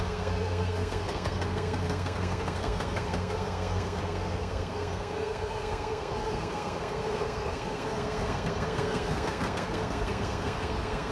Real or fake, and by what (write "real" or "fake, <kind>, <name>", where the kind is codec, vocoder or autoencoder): fake, codec, SNAC